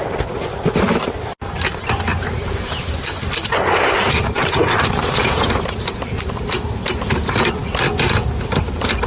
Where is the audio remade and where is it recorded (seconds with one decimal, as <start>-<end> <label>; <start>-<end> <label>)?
0.0-2.1 recorded; 2.1-6.7 remade; 6.7-9.1 recorded